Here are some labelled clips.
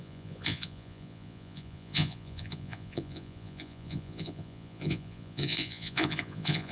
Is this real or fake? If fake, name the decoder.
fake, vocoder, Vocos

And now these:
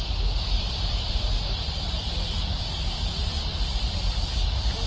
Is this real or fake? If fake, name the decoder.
fake, vocoder, BigVGAN v2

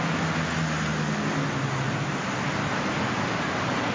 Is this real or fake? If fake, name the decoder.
real